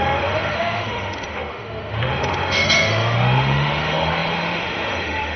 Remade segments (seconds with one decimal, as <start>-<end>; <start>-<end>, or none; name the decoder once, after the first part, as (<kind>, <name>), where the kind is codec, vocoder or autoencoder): 0.0-5.4 (autoencoder, DAC-VAE)